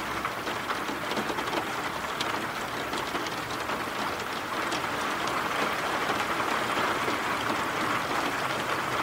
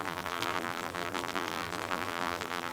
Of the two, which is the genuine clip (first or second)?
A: first